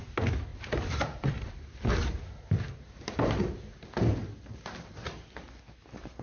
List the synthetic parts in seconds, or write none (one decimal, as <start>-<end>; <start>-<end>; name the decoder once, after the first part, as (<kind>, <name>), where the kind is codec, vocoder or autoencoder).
0.5-1.5 (vocoder, BigVGAN v2)